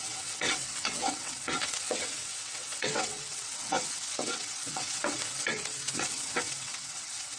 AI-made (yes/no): yes